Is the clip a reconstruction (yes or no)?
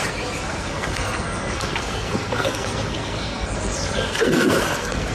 yes